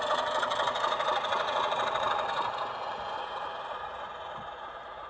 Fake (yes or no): yes